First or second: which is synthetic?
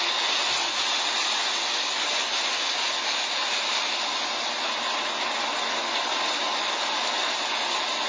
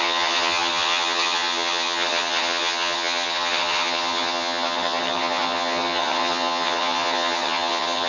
second